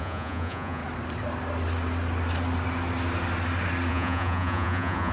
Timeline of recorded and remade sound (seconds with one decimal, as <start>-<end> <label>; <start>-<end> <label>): 0.0-0.8 remade; 0.8-3.9 recorded; 3.9-5.1 remade